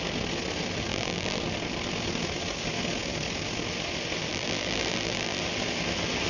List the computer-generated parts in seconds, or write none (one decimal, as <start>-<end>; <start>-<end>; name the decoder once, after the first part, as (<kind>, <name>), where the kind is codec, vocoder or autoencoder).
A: 0.9-1.4 (vocoder, BigVGAN v2); 4.3-5.4